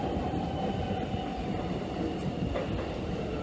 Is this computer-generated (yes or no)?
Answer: no